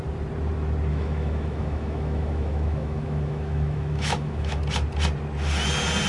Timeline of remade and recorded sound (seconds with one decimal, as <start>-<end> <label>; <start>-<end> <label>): 0.0-0.9 recorded; 0.9-4.6 remade; 4.6-6.1 recorded